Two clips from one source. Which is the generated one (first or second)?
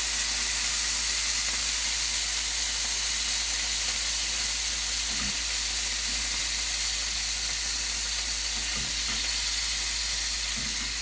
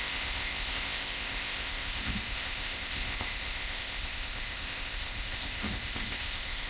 second